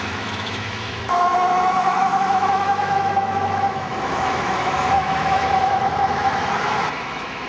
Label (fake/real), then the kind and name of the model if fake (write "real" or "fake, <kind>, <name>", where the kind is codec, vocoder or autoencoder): fake, autoencoder, DAC-VAE